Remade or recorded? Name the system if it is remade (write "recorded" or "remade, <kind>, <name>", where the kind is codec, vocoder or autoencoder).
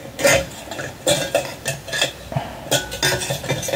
recorded